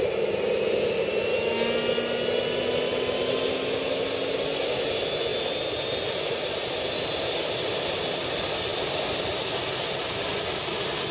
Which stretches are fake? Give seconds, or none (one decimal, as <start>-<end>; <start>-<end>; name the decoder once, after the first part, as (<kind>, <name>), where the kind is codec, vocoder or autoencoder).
none